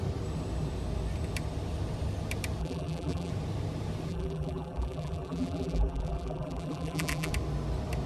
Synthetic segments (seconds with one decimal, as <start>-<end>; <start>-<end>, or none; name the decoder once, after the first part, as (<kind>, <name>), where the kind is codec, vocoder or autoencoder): 2.6-3.3 (vocoder, BigVGAN v2); 4.1-7.3